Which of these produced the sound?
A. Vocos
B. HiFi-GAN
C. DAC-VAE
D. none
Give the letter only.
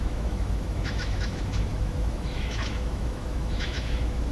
C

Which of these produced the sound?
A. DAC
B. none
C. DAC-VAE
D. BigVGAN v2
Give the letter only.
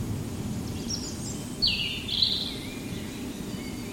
B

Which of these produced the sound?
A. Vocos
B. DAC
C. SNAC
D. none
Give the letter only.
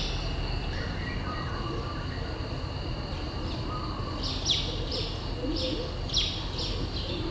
D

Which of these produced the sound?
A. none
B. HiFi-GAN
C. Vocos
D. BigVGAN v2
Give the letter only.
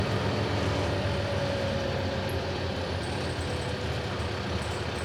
A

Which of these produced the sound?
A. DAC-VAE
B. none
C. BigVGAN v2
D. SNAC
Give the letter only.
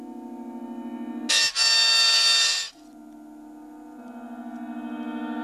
B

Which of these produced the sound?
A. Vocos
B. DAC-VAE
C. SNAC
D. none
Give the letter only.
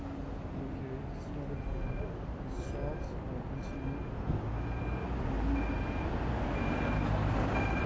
D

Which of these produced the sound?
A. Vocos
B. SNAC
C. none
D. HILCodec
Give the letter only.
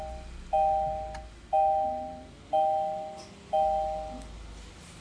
C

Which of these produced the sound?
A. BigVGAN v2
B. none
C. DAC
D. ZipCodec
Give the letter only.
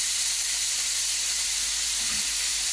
A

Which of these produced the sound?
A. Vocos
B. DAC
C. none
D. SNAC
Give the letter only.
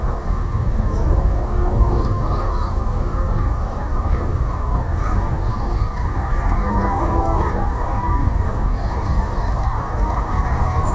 B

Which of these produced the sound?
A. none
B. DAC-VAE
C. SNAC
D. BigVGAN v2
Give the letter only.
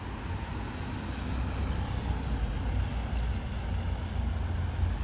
A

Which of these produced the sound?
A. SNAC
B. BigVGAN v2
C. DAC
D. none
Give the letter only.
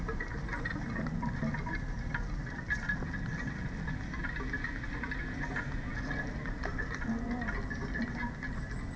D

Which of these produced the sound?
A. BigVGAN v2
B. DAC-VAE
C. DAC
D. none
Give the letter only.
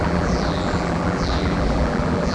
A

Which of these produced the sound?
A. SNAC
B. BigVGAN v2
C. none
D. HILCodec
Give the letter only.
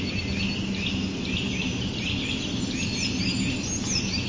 C